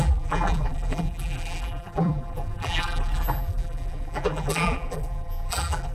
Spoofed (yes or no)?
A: yes